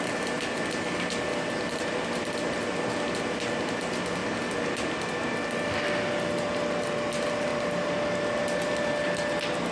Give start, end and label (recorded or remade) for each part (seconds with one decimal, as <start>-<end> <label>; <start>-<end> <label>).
0.0-7.5 recorded; 7.5-8.7 remade; 8.7-9.7 recorded